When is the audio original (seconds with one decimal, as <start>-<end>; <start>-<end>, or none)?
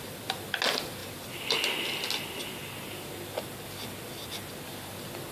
0.0-5.3